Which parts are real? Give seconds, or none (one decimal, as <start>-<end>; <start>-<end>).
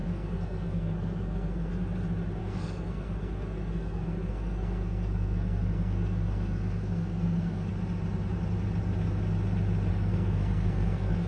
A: 1.7-2.4; 7.7-9.9